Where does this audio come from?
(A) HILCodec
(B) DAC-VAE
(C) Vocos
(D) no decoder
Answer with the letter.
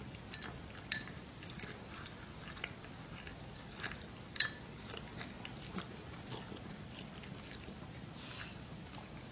D